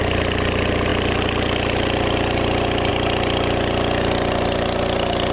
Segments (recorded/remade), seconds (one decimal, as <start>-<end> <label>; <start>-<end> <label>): 0.0-5.3 recorded

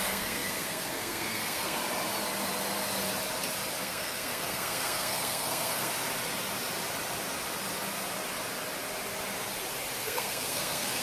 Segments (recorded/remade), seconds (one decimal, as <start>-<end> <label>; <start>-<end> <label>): 0.0-1.8 remade; 1.8-3.8 recorded; 3.8-5.9 remade; 5.9-10.0 recorded; 10.0-11.0 remade

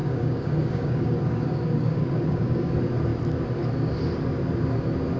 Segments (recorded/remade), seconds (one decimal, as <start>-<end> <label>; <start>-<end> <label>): 0.0-2.7 remade; 2.7-5.2 recorded

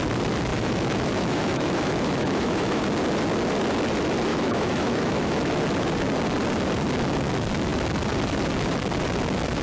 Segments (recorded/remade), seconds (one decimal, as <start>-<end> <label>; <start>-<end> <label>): 0.0-0.5 recorded; 0.5-2.8 remade; 2.8-4.3 recorded; 4.3-5.6 remade; 5.6-9.6 recorded

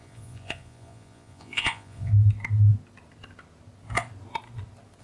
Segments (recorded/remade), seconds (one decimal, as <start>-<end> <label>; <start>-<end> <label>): 0.0-2.1 remade; 2.1-5.0 recorded

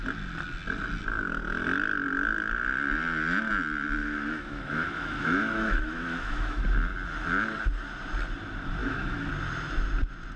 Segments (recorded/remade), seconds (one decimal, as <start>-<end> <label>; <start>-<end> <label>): 0.0-4.0 recorded; 4.0-6.6 remade; 6.6-8.8 recorded; 8.8-9.3 remade; 9.3-10.4 recorded

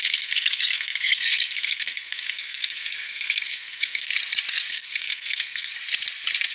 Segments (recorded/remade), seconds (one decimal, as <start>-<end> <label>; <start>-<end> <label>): 0.0-4.1 remade; 4.1-4.7 recorded; 4.7-5.7 remade; 5.7-6.5 recorded

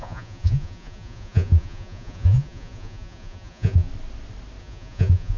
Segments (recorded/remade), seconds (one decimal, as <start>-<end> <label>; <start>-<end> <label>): 0.0-3.9 remade; 3.9-4.6 recorded; 4.6-5.4 remade